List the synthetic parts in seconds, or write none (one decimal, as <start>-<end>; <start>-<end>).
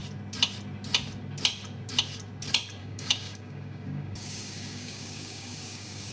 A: 2.8-6.1